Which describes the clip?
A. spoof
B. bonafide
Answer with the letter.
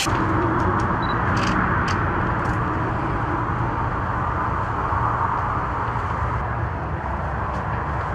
B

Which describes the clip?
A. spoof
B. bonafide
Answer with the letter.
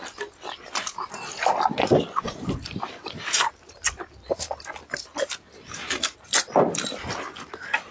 B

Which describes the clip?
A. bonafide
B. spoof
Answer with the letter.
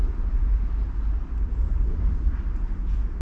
A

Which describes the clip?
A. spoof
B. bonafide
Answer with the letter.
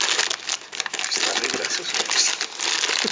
B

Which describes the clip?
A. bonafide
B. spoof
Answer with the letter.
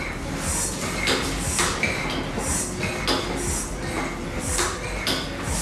A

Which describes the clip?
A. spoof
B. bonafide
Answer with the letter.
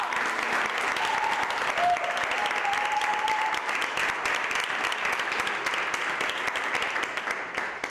B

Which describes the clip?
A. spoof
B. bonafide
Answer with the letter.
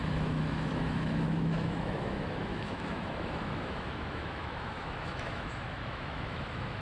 A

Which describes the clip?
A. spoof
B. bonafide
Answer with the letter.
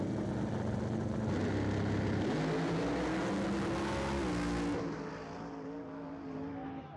B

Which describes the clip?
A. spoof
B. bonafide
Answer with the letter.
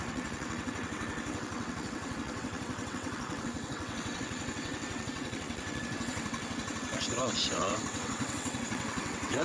A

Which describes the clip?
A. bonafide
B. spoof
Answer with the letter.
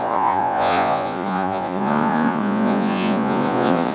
B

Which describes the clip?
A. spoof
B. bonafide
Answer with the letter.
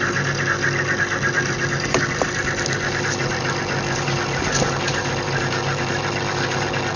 B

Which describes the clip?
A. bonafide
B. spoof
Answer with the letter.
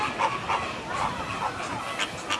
A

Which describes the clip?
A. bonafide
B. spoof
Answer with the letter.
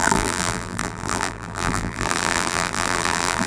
B